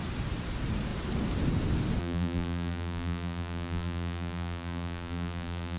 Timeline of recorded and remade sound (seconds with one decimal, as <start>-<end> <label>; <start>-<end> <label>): 0.0-2.0 recorded; 2.0-5.8 remade